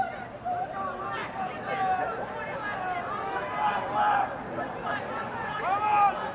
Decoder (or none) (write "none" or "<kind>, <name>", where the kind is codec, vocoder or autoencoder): none